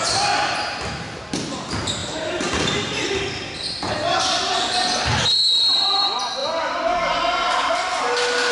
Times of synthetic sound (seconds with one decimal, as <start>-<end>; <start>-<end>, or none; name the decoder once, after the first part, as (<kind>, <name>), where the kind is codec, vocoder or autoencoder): 2.0-3.2 (vocoder, BigVGAN v2)